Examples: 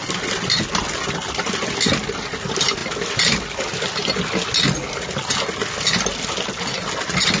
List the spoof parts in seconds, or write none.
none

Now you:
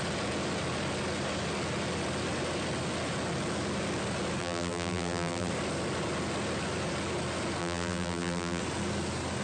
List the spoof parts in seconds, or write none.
4.4-5.5 (vocoder, BigVGAN v2); 7.6-8.6

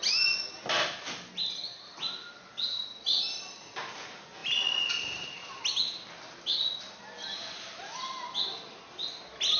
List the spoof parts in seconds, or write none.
none

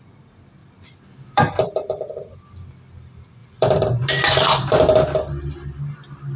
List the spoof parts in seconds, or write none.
0.6-2.3 (vocoder, BigVGAN v2); 3.4-4.8